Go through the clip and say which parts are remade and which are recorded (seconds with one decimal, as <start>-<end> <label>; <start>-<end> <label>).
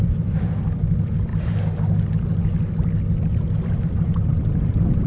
0.0-1.3 remade; 1.3-3.4 recorded; 3.4-5.1 remade